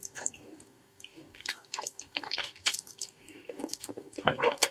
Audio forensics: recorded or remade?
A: remade